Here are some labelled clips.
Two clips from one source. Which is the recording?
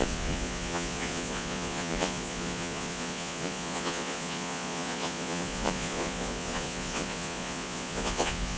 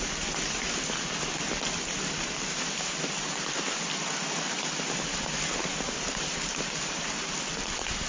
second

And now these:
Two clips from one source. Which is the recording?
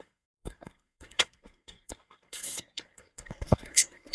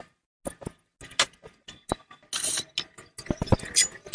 second